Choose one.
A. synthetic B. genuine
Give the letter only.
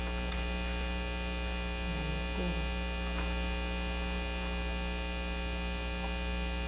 B